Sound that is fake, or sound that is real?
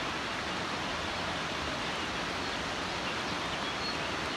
real